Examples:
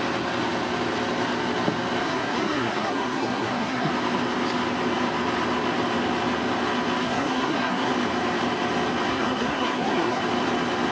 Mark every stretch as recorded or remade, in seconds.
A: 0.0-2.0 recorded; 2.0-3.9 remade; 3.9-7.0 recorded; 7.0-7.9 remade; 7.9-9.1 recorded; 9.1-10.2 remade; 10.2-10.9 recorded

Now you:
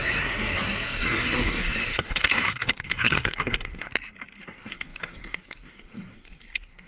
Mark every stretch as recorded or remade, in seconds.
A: 0.0-3.9 remade; 3.9-4.4 recorded; 4.4-6.9 remade

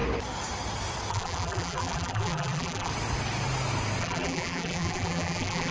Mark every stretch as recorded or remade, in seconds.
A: 0.0-1.1 recorded; 1.1-2.9 remade; 2.9-4.0 recorded; 4.0-5.7 remade

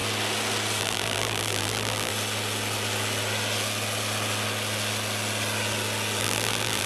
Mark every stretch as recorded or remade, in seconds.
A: 0.0-0.8 recorded; 0.8-2.1 remade; 2.1-6.2 recorded; 6.2-6.9 remade

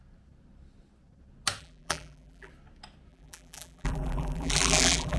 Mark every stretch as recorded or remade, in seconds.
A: 0.0-1.6 recorded; 1.6-2.5 remade; 2.5-3.1 recorded; 3.1-5.2 remade

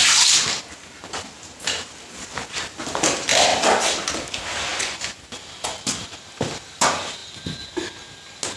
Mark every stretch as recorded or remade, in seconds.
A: 0.0-4.7 recorded; 4.7-5.2 remade; 5.2-8.6 recorded

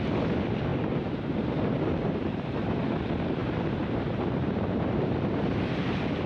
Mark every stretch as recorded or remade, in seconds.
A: 0.0-0.7 recorded; 0.7-2.9 remade; 2.9-3.4 recorded; 3.4-5.5 remade; 5.5-6.3 recorded